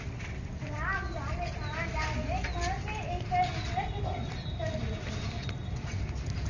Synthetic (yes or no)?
no